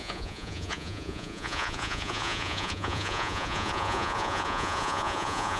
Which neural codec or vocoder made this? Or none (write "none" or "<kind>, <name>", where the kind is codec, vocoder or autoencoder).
vocoder, Vocos